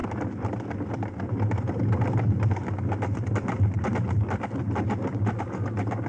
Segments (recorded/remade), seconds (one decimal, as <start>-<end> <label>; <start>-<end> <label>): 0.0-6.1 recorded